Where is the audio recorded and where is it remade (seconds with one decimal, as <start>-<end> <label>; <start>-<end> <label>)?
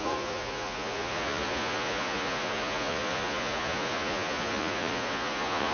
0.0-5.7 remade